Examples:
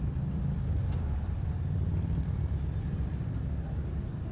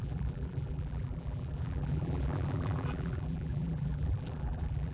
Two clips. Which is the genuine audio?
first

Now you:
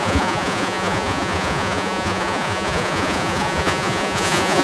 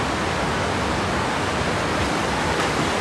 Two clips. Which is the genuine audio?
second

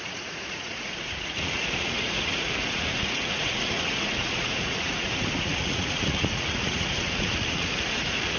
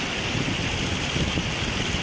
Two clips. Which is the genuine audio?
second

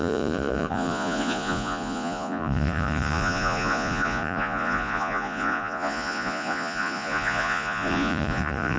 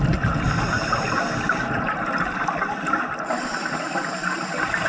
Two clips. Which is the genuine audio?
second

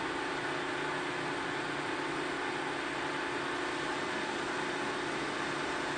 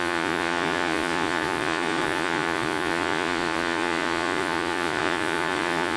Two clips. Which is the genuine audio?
first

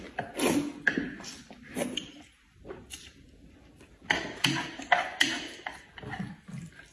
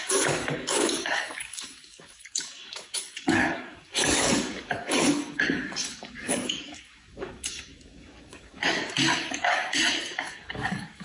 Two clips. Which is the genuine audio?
first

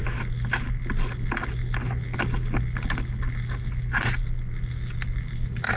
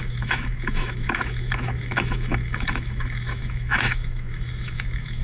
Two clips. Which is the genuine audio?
first